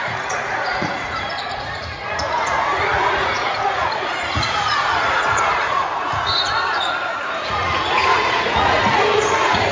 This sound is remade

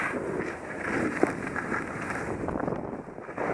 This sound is recorded